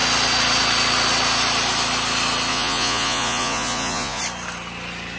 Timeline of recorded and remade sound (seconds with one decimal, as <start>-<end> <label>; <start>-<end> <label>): 0.0-2.5 recorded; 2.5-4.2 remade; 4.2-5.2 recorded